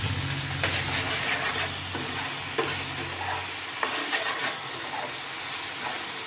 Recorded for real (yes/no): yes